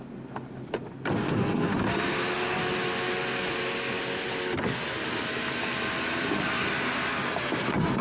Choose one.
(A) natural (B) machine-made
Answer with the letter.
A